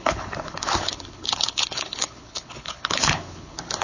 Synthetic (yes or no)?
yes